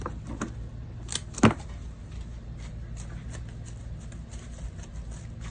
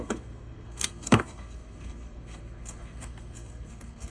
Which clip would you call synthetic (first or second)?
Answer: second